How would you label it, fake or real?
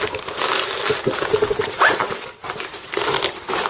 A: real